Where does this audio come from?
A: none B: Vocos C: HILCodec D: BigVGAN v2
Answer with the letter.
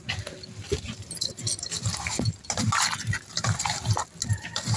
A